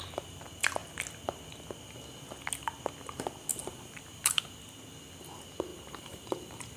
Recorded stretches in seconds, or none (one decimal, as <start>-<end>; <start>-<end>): 0.0-3.5; 4.4-5.7

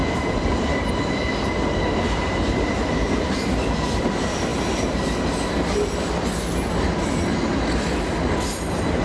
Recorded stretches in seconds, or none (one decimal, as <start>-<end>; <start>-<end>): 0.9-9.0

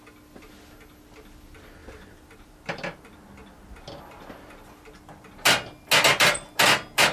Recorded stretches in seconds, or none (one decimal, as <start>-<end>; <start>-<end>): 0.0-1.8; 3.2-7.1

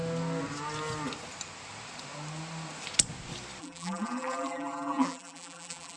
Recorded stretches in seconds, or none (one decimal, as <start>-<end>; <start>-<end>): 0.0-3.6